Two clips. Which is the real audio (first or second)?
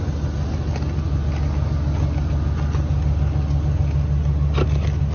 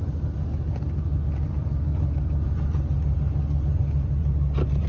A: first